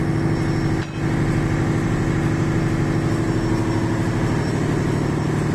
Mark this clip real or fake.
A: real